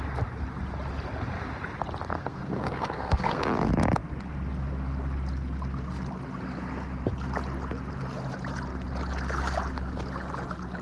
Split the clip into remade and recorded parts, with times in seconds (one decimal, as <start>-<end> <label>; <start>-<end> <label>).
0.0-2.1 recorded; 2.1-3.4 remade; 3.4-10.8 recorded